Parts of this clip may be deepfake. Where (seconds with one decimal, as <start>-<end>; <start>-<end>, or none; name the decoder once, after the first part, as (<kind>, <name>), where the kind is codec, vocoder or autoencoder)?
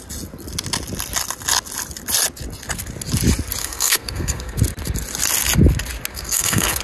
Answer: 3.6-4.6 (codec, SNAC); 6.1-6.8